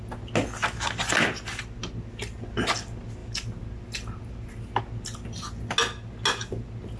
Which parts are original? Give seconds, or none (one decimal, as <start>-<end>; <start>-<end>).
0.0-7.0